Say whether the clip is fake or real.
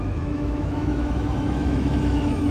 fake